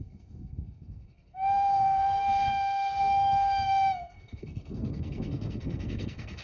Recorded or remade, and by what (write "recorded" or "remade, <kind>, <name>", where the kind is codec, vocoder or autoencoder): remade, codec, SNAC